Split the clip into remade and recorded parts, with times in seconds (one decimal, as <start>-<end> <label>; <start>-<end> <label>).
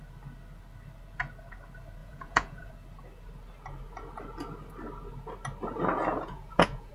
0.0-2.0 recorded; 2.0-2.7 remade; 2.7-6.1 recorded; 6.1-6.9 remade